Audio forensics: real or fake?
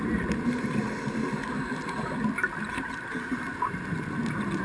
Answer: real